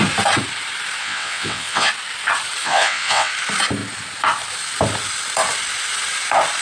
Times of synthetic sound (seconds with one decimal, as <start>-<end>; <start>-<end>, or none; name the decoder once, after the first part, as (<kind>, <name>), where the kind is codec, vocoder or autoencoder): 1.0-1.9 (vocoder, WaveNeXt); 2.6-3.3